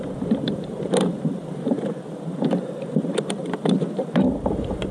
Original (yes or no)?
no